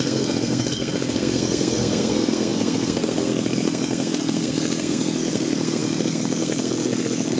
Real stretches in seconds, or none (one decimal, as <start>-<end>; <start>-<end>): none